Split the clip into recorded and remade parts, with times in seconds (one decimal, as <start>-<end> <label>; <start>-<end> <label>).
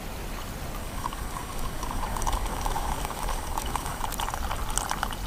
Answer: 0.0-0.8 recorded; 0.8-4.0 remade; 4.0-5.3 recorded